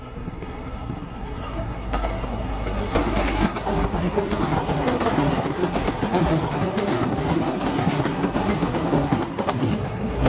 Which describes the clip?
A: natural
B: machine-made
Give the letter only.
B